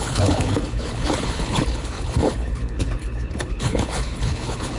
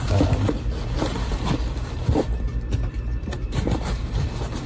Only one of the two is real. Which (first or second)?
second